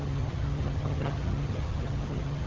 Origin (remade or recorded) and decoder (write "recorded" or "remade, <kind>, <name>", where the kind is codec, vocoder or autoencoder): remade, vocoder, HiFi-GAN